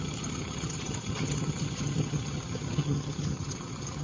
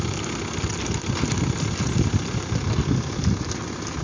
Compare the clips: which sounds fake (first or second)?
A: first